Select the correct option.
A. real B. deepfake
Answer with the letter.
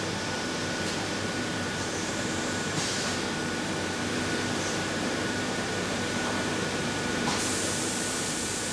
B